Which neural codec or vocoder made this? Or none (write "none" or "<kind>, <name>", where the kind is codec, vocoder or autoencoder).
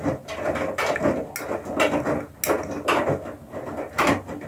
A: none